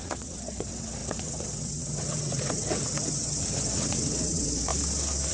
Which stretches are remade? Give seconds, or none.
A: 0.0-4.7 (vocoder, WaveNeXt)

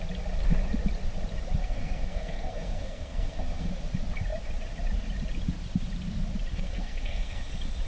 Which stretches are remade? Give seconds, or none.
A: 1.6-3.7 (codec, SNAC); 6.5-7.5

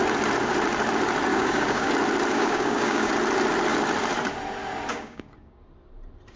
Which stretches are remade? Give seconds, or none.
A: 1.3-1.9 (codec, DAC); 2.3-3.1; 4.9-5.6